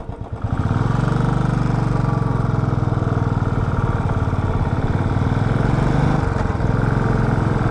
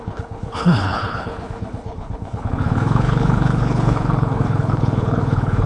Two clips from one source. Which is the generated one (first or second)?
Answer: second